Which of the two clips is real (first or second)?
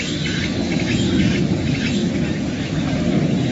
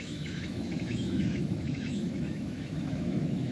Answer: first